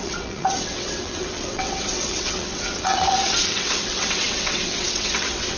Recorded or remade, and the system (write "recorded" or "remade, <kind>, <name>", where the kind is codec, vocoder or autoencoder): remade, vocoder, WaveNeXt